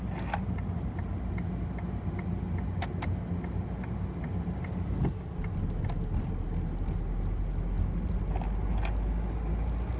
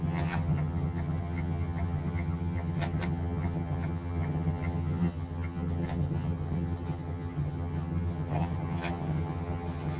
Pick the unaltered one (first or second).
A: first